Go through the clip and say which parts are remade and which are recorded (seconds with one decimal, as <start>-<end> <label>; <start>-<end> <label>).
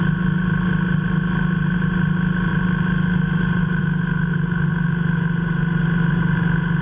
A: 0.0-6.8 recorded